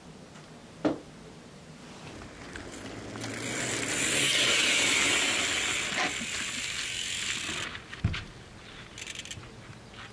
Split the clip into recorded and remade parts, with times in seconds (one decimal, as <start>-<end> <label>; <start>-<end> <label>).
0.0-0.6 recorded; 0.6-1.8 remade; 1.8-10.1 recorded

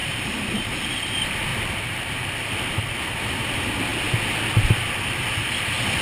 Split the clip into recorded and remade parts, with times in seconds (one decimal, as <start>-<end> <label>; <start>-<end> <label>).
0.0-1.0 remade; 1.0-1.5 recorded; 1.5-3.0 remade; 3.0-6.0 recorded

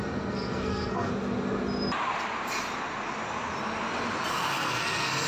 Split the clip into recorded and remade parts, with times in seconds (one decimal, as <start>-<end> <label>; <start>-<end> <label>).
0.0-1.1 remade; 1.1-4.3 recorded; 4.3-5.3 remade

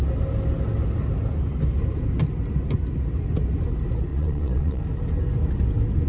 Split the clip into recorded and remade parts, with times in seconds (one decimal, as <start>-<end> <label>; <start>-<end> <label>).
0.0-4.1 recorded; 4.1-4.8 remade; 4.8-6.1 recorded

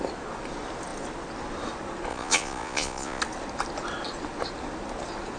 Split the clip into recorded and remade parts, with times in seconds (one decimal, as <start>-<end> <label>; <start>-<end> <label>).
0.0-2.1 recorded; 2.1-3.2 remade; 3.2-5.4 recorded

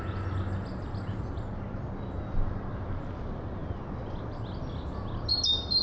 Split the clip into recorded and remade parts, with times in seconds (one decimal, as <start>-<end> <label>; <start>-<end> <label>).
0.0-5.8 recorded

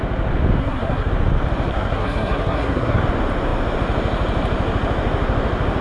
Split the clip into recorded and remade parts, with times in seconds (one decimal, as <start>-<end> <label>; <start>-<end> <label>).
0.0-0.6 recorded; 0.6-1.1 remade; 1.1-1.7 recorded; 1.7-3.0 remade; 3.0-5.8 recorded